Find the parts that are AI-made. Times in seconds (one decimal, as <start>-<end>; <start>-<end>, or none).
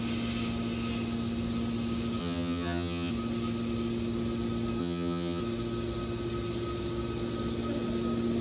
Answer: 2.2-3.1; 4.8-5.4